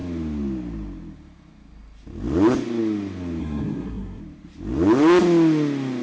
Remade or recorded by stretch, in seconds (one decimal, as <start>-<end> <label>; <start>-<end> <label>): 0.0-3.4 recorded; 3.4-4.2 remade; 4.2-6.0 recorded